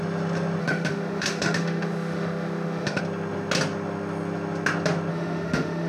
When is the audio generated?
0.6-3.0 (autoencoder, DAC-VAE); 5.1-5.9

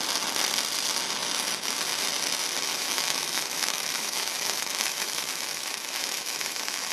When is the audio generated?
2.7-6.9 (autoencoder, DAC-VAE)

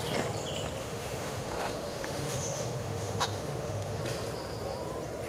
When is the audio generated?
0.8-4.0 (autoencoder, DAC-VAE)

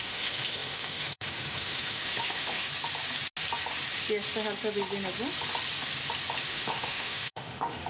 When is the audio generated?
0.0-2.7 (autoencoder, DAC-VAE); 6.5-7.9

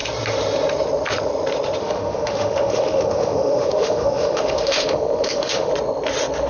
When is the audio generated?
1.8-5.7 (autoencoder, DAC-VAE)